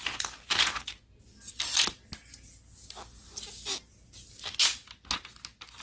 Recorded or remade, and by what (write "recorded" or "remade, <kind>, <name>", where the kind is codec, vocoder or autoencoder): recorded